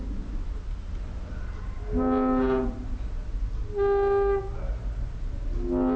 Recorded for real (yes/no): yes